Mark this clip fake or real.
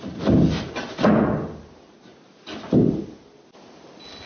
real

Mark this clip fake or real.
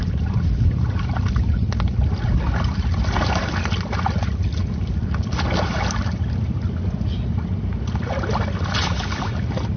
real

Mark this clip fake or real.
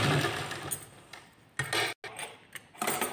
real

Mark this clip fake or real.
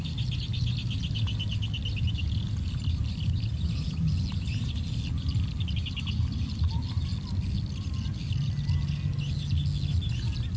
real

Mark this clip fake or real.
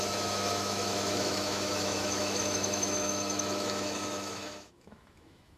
fake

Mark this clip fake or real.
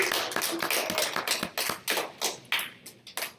real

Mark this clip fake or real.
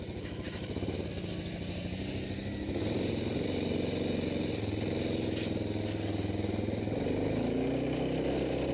real